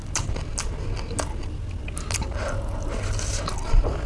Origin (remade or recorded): recorded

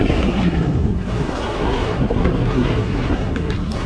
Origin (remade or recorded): remade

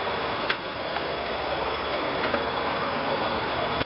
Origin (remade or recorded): remade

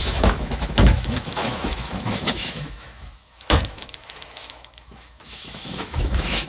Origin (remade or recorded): remade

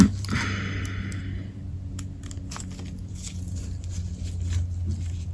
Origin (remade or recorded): recorded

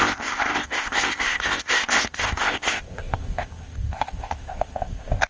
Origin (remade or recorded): remade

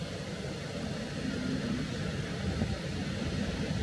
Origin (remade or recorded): recorded